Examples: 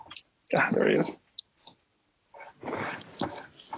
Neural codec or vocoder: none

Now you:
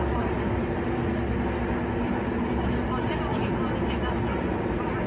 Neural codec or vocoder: none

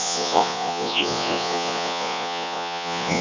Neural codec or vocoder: vocoder, Vocos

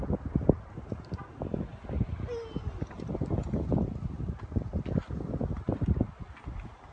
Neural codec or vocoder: none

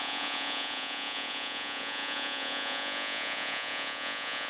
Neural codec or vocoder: vocoder, Vocos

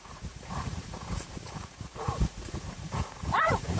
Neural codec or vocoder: vocoder, Vocos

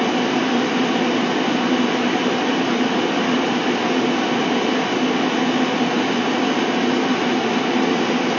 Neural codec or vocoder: none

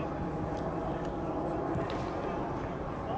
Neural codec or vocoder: none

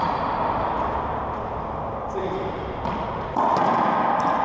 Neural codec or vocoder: none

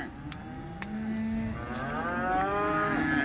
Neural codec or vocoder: none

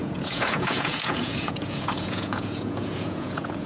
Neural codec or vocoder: vocoder, Vocos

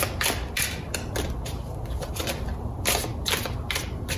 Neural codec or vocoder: none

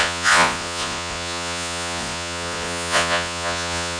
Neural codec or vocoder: vocoder, Vocos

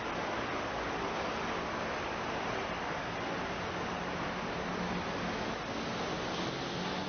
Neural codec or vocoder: none